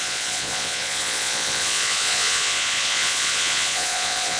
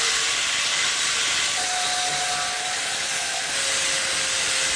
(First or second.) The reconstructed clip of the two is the first